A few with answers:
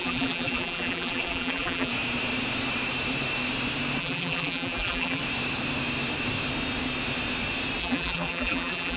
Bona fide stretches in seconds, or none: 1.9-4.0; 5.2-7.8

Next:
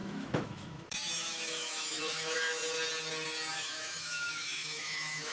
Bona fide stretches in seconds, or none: 2.6-3.5

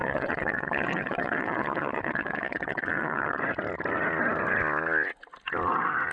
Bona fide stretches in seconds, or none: 3.4-6.1

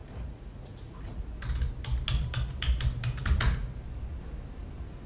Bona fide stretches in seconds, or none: 1.2-5.1

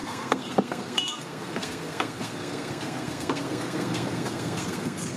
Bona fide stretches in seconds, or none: none

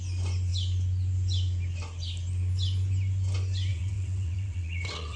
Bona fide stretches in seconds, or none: 0.0-3.7

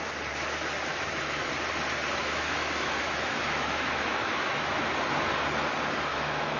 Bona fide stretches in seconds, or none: 0.0-0.9; 1.5-2.2; 4.9-6.1

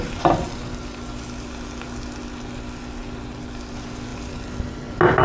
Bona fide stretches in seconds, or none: 0.0-5.2